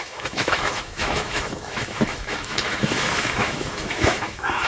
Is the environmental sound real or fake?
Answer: fake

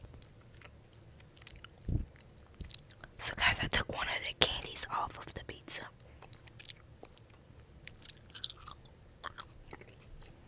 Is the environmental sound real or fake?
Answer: real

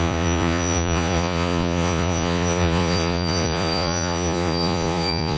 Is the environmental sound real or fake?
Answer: fake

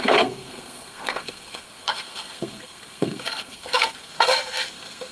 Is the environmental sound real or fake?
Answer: fake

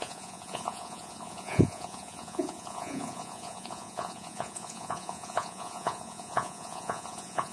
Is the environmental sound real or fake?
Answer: fake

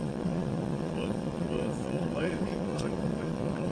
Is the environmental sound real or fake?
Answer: fake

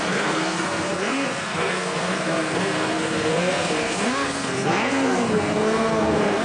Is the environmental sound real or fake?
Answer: fake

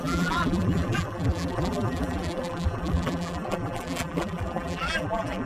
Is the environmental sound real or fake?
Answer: fake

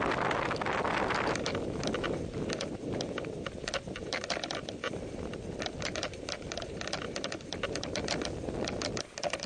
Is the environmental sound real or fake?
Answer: real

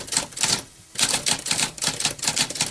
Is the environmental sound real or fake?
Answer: real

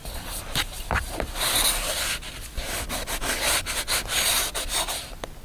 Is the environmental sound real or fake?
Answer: real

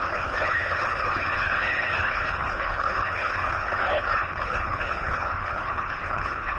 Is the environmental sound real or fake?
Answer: fake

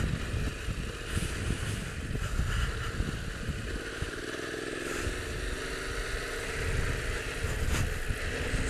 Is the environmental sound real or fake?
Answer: real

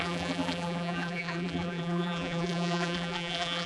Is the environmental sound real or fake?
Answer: fake